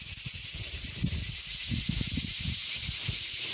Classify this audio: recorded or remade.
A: recorded